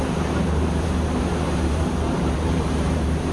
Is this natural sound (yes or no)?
no